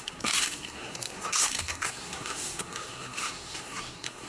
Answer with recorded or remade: remade